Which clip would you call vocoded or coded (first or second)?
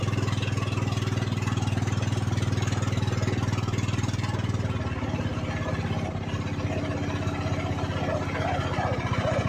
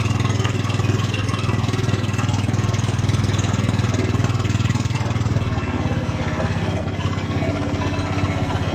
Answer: second